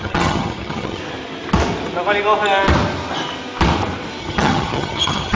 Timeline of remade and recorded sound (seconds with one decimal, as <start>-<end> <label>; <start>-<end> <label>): 0.0-1.0 remade; 1.0-4.2 recorded; 4.2-5.3 remade